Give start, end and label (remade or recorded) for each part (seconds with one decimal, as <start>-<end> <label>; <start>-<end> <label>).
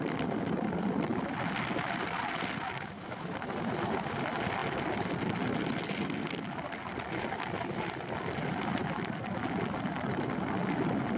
0.0-11.2 recorded